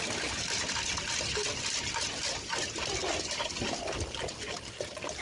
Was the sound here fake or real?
real